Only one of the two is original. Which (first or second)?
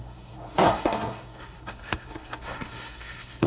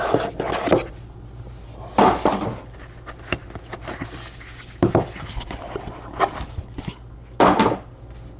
second